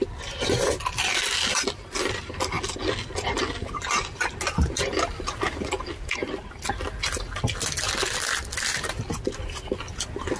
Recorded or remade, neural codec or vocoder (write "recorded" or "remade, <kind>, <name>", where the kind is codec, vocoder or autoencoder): recorded